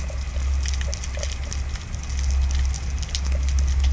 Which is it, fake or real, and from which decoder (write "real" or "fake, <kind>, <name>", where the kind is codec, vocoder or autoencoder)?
real